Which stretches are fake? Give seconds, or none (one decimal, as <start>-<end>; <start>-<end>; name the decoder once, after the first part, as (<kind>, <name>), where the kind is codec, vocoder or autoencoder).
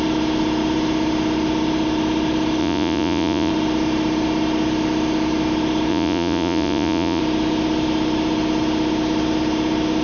2.6-3.5 (vocoder, Vocos); 5.9-7.2